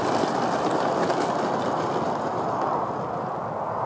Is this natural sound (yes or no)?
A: yes